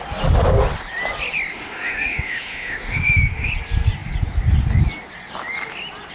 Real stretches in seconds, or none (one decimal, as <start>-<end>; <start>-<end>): 0.0-1.5; 3.5-6.1